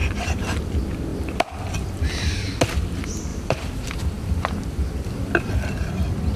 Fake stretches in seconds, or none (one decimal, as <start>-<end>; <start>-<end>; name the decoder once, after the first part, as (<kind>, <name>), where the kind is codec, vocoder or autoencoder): 0.0-0.7 (vocoder, BigVGAN v2); 1.1-2.2; 3.3-5.9